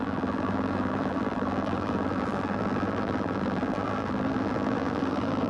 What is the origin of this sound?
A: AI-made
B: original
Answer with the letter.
A